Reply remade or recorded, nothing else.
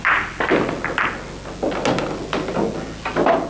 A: recorded